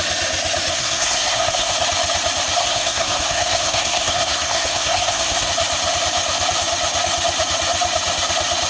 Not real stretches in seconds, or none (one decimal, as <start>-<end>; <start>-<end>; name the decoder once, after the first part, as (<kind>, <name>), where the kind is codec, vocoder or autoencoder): 0.7-1.7 (codec, SNAC); 2.6-5.5